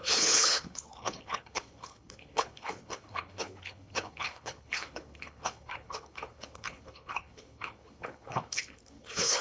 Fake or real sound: fake